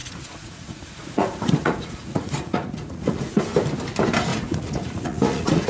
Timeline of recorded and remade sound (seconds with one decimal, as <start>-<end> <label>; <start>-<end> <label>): 0.0-3.4 remade; 3.4-4.3 recorded; 4.3-5.7 remade